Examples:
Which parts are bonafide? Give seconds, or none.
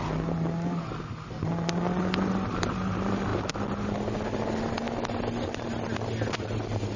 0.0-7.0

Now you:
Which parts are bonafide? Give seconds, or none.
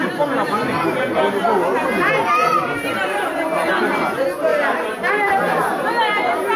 0.0-6.6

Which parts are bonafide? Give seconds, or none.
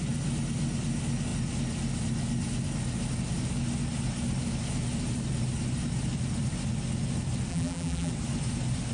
0.0-7.5; 8.1-8.9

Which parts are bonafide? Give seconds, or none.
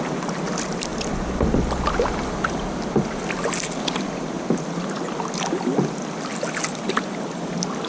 0.0-7.9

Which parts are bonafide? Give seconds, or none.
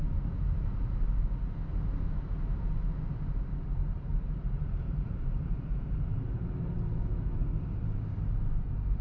0.0-4.1; 6.7-9.0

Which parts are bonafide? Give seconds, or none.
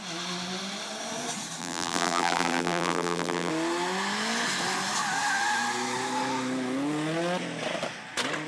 0.0-1.6; 3.5-8.5